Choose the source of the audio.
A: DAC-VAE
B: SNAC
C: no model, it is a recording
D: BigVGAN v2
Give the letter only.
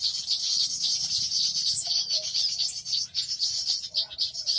C